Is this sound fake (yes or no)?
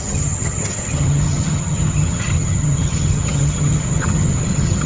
yes